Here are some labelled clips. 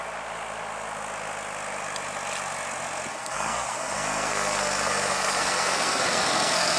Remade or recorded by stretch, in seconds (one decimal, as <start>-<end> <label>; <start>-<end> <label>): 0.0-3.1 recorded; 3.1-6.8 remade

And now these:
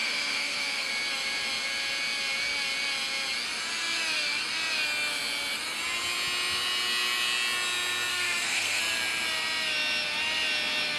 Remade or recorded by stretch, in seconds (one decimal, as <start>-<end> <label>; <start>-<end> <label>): 0.0-0.9 remade; 0.9-8.1 recorded; 8.1-8.8 remade; 8.8-11.0 recorded

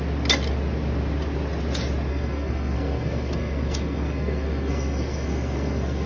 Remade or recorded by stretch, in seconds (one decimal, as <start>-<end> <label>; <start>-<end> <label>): 0.0-2.1 recorded; 2.1-6.1 remade

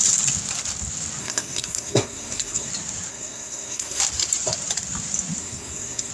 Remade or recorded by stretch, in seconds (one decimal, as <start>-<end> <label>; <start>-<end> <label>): 0.0-1.2 recorded; 1.2-2.7 remade; 2.7-3.1 recorded; 3.1-4.0 remade; 4.0-5.4 recorded; 5.4-6.1 remade

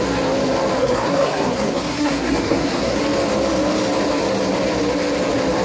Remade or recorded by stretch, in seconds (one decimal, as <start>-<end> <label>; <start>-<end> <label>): 0.0-0.8 recorded; 0.8-3.0 remade; 3.0-5.6 recorded

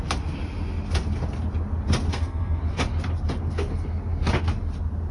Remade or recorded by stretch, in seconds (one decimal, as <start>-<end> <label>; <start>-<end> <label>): 0.0-2.1 recorded; 2.1-2.6 remade; 2.6-5.1 recorded

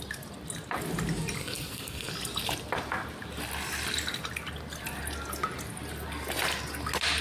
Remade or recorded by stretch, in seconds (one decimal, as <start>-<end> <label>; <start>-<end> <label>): 0.0-1.4 recorded; 1.4-2.1 remade; 2.1-7.2 recorded